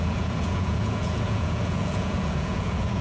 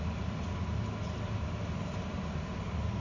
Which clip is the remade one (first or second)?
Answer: first